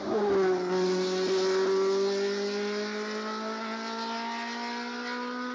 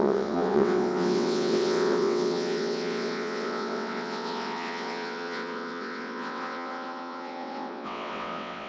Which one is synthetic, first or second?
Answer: second